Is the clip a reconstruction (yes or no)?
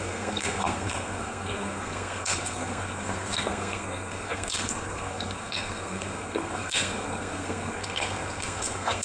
yes